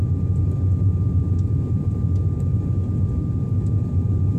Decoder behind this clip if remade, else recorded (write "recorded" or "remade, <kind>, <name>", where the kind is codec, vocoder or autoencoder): remade, vocoder, BigVGAN v2